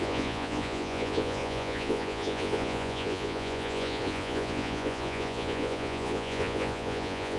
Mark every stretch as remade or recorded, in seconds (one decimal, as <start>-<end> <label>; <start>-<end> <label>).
0.0-7.4 remade

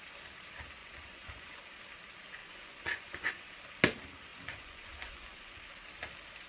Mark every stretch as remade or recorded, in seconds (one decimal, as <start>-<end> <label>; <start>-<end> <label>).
0.0-0.8 recorded; 0.8-1.6 remade; 1.6-2.4 recorded; 2.4-3.5 remade; 3.5-4.3 recorded; 4.3-5.6 remade; 5.6-6.5 recorded

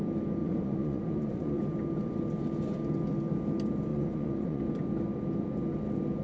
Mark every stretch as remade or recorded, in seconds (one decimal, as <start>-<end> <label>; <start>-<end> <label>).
0.0-0.4 recorded; 0.4-1.6 remade; 1.6-3.9 recorded; 3.9-4.6 remade; 4.6-6.2 recorded

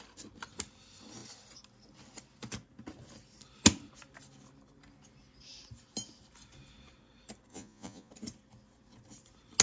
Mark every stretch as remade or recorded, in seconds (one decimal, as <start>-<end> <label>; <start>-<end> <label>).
0.0-7.5 recorded; 7.5-8.1 remade; 8.1-9.6 recorded